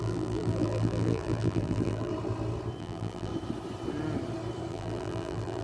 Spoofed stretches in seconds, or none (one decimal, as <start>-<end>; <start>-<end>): 0.0-2.1; 2.8-3.3; 4.7-5.6